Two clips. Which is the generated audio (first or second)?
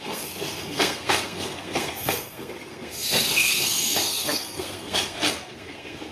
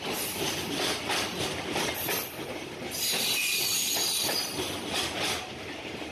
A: first